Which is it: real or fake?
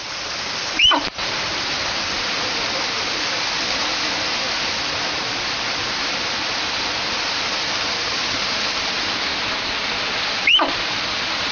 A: real